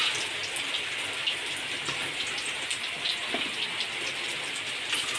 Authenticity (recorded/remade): recorded